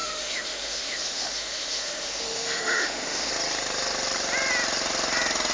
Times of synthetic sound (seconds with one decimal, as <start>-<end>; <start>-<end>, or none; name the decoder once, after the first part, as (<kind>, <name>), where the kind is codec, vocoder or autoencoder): 0.0-3.3 (autoencoder, DAC-VAE)

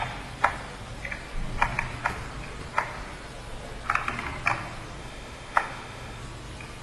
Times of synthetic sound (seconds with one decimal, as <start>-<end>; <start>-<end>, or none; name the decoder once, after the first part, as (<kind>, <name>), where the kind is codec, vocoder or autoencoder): 5.0-6.2 (autoencoder, DAC-VAE)

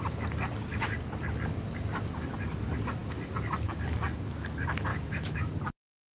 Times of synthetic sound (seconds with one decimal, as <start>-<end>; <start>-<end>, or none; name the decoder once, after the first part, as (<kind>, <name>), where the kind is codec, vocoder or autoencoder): 4.9-5.5 (autoencoder, DAC-VAE)